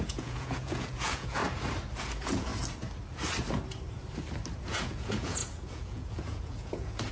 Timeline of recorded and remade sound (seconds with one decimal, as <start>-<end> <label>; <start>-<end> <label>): 0.0-1.4 remade; 1.4-2.0 recorded; 2.0-2.5 remade; 2.5-4.6 recorded; 4.6-7.1 remade